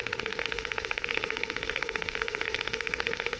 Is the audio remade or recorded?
remade